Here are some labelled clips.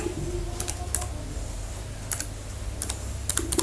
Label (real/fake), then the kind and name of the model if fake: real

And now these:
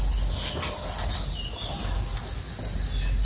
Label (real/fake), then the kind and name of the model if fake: real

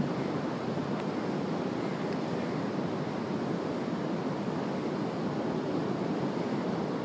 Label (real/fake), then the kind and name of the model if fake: real